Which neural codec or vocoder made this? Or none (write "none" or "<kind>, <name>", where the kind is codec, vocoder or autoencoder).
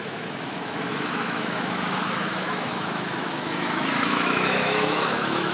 autoencoder, DAC-VAE